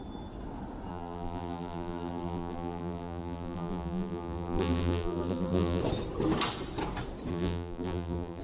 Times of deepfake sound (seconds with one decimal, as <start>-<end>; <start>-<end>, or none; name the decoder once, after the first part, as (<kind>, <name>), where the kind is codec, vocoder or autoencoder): 0.9-5.8 (vocoder, BigVGAN v2); 7.3-8.4